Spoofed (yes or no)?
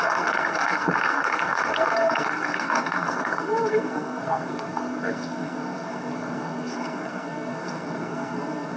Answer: yes